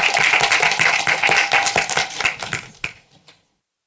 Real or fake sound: real